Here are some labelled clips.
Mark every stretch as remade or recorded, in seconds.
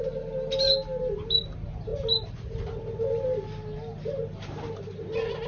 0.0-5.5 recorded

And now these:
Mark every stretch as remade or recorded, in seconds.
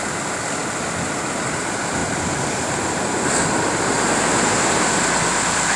0.0-0.6 remade; 0.6-1.1 recorded; 1.1-2.0 remade; 2.0-5.8 recorded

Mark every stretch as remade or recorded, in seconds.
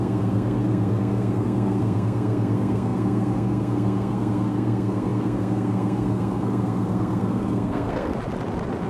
0.0-8.1 remade; 8.1-8.9 recorded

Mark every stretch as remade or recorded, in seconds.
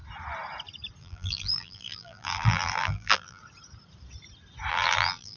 0.0-1.0 recorded; 1.0-3.4 remade; 3.4-4.7 recorded; 4.7-5.4 remade